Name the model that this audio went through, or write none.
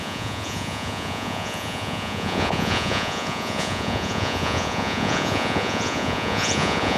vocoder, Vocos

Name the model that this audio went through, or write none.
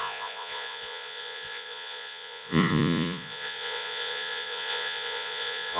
vocoder, Vocos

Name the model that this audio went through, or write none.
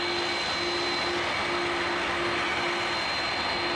none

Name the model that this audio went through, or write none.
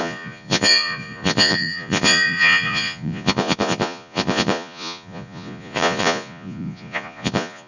vocoder, Vocos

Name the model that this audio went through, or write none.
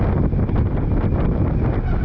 none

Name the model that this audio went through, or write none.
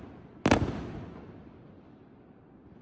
none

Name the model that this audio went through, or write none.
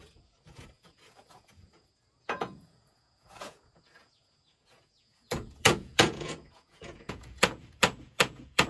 vocoder, Vocos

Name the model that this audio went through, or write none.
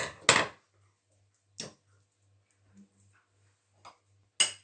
none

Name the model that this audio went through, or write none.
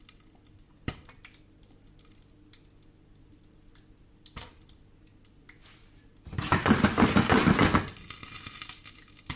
none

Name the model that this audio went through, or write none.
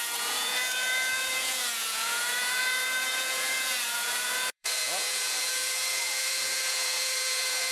vocoder, Vocos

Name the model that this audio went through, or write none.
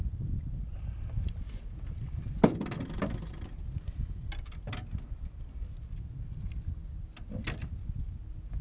none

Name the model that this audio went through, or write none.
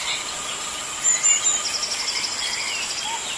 none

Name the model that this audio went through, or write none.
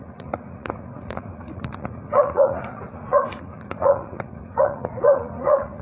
vocoder, Vocos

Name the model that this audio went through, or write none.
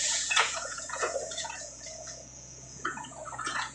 vocoder, Vocos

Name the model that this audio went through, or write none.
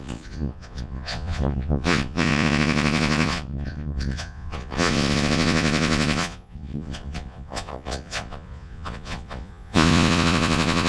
vocoder, Vocos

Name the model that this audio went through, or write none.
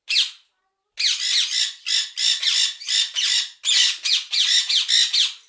none